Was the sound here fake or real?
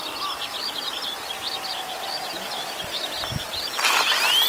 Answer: real